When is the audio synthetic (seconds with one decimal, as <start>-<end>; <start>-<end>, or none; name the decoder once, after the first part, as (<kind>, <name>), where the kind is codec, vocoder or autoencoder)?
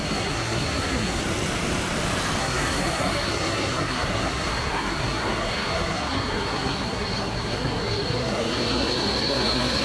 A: 0.0-1.2 (codec, SNAC); 2.4-9.8